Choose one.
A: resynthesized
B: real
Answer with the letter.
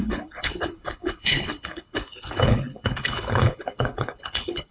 A